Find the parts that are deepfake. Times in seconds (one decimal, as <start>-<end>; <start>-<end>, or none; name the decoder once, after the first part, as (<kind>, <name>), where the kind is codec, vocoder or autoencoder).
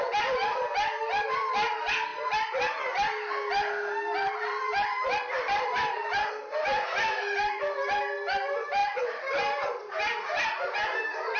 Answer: none